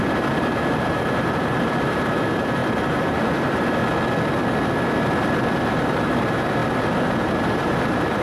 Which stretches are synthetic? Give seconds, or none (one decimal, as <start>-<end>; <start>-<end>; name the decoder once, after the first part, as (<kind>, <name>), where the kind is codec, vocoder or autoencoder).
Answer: 0.0-3.8 (vocoder, BigVGAN v2); 5.5-8.2